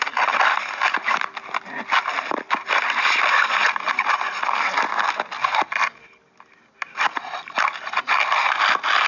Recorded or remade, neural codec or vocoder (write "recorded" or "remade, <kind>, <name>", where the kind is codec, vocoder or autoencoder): recorded